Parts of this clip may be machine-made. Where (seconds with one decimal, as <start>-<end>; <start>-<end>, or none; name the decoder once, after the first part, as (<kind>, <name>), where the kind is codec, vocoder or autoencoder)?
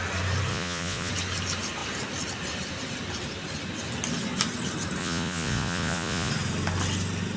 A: 0.5-1.1 (vocoder, Vocos); 5.0-6.3